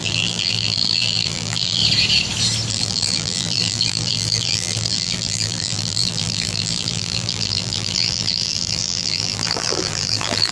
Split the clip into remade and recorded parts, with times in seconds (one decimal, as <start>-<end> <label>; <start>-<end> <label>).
0.0-1.8 remade; 1.8-2.7 recorded; 2.7-10.5 remade